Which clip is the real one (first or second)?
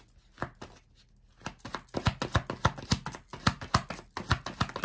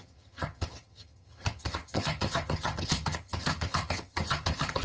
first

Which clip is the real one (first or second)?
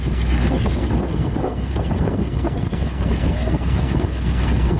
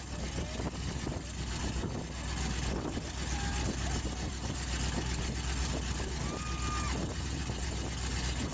second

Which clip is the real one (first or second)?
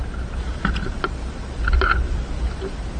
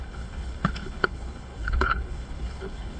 first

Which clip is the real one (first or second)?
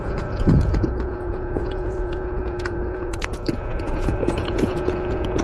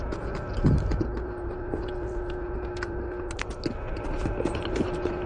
second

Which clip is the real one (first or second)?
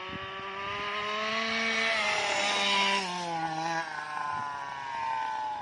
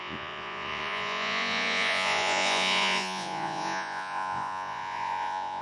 first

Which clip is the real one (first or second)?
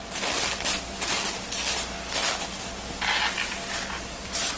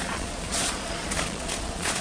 first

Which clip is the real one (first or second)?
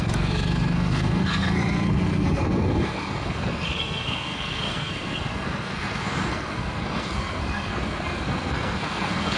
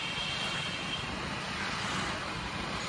second